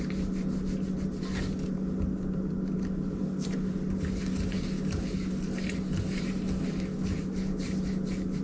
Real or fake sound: real